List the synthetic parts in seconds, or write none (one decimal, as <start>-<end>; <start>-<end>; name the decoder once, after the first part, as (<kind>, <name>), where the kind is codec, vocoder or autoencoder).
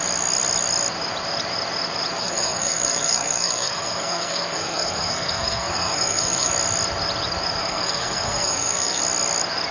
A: 2.2-6.5 (codec, SNAC); 7.6-9.0